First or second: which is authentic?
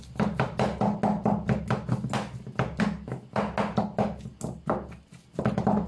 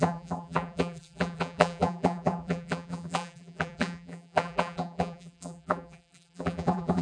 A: first